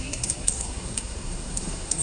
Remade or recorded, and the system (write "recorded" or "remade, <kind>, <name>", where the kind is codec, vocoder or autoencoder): remade, codec, SNAC